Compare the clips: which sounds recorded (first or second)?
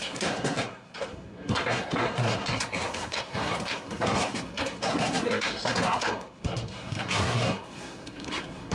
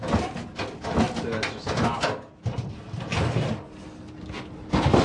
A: second